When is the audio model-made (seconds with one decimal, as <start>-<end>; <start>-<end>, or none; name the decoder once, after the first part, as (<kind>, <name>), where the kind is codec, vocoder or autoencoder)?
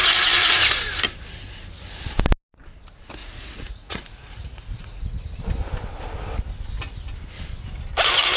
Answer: 3.2-5.2 (vocoder, Vocos)